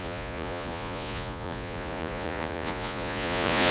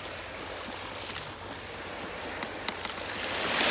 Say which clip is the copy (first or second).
first